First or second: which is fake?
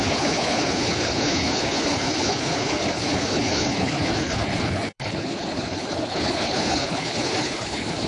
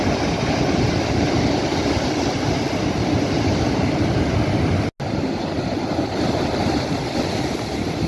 first